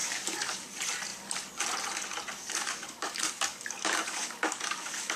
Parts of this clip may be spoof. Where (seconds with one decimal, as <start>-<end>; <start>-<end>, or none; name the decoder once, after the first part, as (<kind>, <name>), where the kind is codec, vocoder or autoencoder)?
0.0-0.7 (codec, DAC); 2.4-5.2